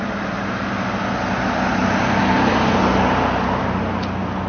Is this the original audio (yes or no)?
yes